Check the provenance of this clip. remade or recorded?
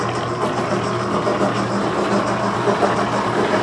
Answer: recorded